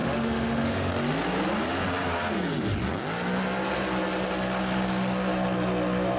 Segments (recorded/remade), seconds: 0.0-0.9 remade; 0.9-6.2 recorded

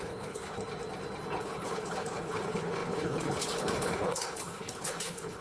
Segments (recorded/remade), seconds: 0.0-0.6 remade; 0.6-1.4 recorded; 1.4-5.4 remade

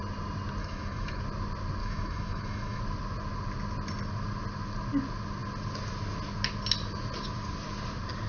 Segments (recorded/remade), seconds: 0.0-0.6 recorded; 0.6-1.2 remade; 1.2-1.8 recorded; 1.8-2.8 remade; 2.8-8.3 recorded